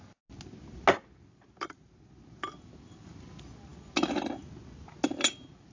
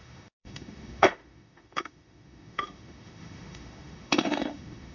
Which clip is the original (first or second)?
first